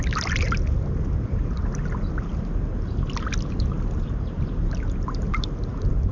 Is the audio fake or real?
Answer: real